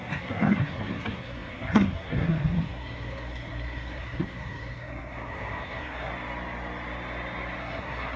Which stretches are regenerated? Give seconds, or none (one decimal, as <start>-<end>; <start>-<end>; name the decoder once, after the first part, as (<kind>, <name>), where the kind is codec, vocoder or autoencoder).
0.0-6.1 (codec, SNAC); 7.6-8.2

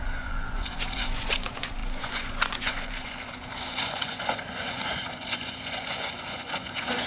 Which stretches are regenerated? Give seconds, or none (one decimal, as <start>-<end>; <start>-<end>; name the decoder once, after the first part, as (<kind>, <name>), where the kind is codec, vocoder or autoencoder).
0.0-7.1 (vocoder, Vocos)

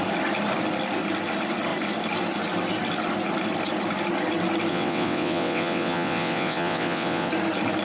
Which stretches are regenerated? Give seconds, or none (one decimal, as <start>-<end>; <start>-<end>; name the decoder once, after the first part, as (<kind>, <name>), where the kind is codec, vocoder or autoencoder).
4.7-7.3 (vocoder, WaveNeXt)

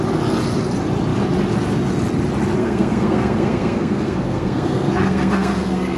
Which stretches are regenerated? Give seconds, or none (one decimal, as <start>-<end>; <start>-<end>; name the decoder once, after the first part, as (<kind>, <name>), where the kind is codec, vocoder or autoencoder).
2.6-6.0 (codec, SNAC)

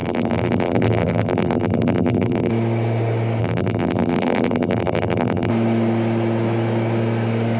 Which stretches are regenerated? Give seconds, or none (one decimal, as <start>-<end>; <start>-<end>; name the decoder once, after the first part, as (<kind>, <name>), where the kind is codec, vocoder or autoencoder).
0.0-2.5 (vocoder, BigVGAN v2); 3.4-5.5